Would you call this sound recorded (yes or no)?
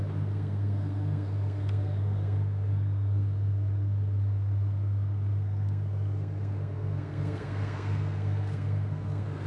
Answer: no